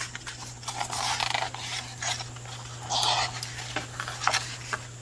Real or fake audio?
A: real